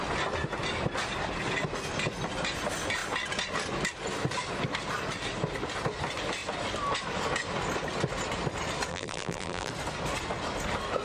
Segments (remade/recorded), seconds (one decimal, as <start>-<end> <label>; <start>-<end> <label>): 0.0-8.9 recorded; 8.9-9.7 remade; 9.7-11.0 recorded